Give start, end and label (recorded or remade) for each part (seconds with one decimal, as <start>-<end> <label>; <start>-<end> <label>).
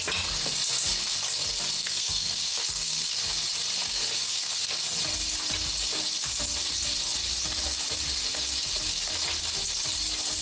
0.0-1.8 recorded; 1.8-3.2 remade; 3.2-3.8 recorded; 3.8-4.7 remade; 4.7-10.4 recorded